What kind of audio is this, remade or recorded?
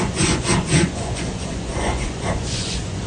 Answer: remade